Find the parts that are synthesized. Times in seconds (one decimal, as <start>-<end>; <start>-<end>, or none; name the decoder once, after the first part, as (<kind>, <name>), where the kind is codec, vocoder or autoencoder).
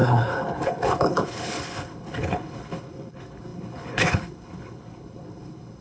0.0-5.8 (codec, HILCodec)